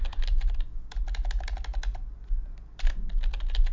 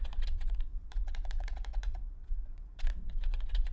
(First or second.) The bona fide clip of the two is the first